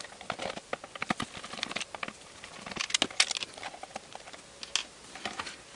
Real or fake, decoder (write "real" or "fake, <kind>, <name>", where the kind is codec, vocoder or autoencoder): real